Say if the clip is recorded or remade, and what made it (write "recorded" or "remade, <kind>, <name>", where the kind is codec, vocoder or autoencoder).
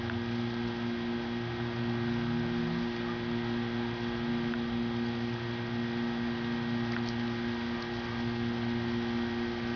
recorded